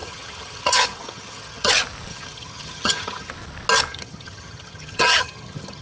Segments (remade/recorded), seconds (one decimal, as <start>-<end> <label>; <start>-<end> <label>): 0.0-1.7 remade; 1.7-2.1 recorded; 2.1-3.3 remade; 3.3-3.9 recorded; 3.9-5.8 remade